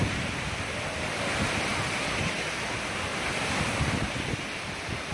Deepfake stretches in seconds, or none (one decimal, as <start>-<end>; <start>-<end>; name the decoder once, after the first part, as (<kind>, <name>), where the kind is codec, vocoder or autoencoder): 3.1-3.6 (vocoder, BigVGAN v2)